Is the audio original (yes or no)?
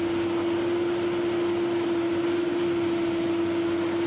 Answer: yes